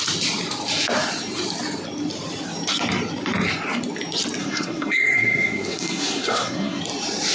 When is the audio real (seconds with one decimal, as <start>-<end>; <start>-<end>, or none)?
0.0-4.4; 6.8-7.3